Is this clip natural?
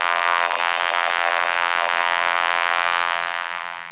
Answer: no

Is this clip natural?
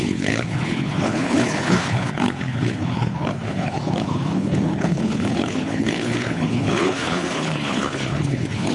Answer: no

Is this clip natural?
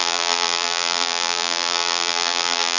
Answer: no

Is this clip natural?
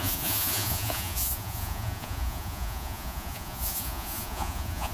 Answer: no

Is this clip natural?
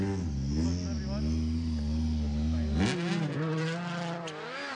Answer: yes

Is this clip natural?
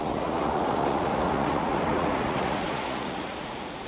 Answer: no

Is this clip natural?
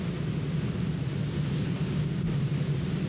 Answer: yes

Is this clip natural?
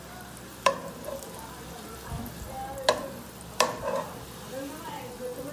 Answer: yes